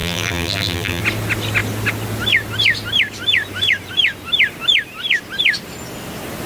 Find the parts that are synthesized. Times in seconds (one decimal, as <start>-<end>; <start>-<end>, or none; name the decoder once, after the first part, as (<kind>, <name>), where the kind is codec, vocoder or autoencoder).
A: 0.0-1.0 (vocoder, BigVGAN v2)